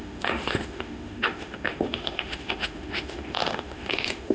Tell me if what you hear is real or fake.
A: fake